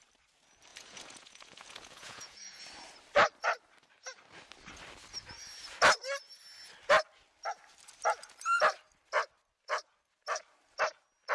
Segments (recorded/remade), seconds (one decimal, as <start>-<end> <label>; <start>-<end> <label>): 0.0-0.7 recorded; 0.7-2.6 remade; 2.6-11.3 recorded